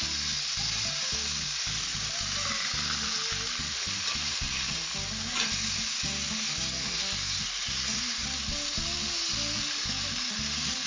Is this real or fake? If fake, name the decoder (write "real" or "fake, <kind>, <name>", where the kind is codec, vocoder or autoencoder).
real